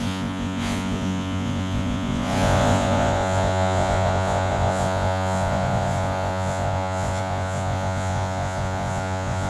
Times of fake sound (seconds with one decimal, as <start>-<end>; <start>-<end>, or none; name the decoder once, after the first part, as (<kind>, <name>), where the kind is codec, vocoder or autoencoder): 0.0-9.5 (vocoder, Vocos)